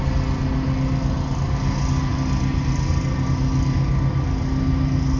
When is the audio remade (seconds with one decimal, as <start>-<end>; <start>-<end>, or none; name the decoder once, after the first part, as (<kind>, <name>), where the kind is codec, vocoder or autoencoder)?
none